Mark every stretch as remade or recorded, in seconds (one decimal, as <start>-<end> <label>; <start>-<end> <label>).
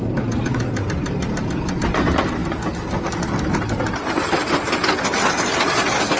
0.0-6.2 recorded